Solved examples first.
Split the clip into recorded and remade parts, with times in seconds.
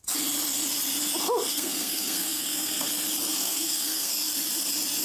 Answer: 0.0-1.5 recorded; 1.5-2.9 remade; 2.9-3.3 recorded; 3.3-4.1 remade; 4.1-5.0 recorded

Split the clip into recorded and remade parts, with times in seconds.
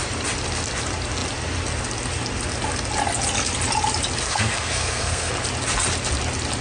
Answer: 0.0-4.2 recorded; 4.2-5.3 remade; 5.3-6.6 recorded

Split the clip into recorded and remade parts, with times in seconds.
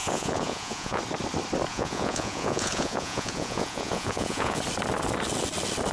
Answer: 0.0-1.0 remade; 1.0-1.7 recorded; 1.7-4.6 remade; 4.6-5.9 recorded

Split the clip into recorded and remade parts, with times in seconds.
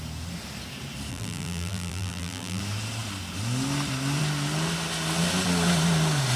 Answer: 0.0-1.1 recorded; 1.1-2.6 remade; 2.6-6.4 recorded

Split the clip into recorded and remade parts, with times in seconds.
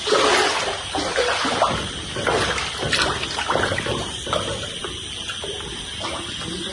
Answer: 0.0-1.1 recorded; 1.1-5.1 remade; 5.1-6.7 recorded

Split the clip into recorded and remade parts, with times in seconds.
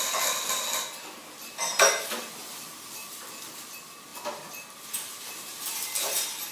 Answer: 0.0-6.5 recorded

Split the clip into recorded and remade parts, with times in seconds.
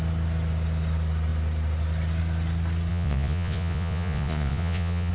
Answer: 0.0-2.9 recorded; 2.9-5.1 remade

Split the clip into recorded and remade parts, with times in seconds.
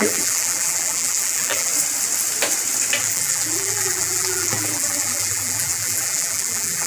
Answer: 0.0-1.7 remade; 1.7-3.0 recorded; 3.0-6.9 remade